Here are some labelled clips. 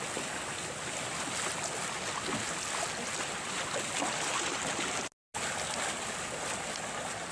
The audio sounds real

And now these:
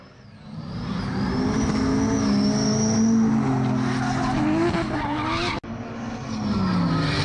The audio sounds real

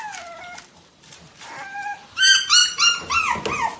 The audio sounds real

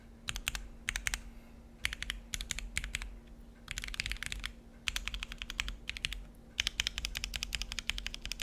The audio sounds real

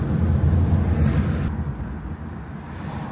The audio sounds real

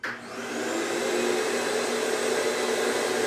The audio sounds real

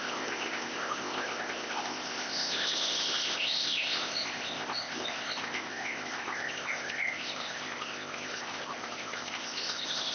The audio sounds fake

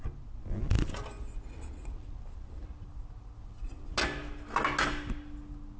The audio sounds real